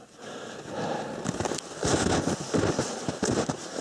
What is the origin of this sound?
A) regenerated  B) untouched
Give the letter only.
B